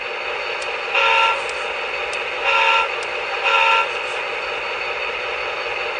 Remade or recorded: recorded